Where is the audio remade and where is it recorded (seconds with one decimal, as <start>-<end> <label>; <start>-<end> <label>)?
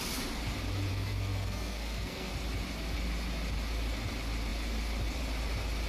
0.0-0.9 recorded; 0.9-2.3 remade; 2.3-5.9 recorded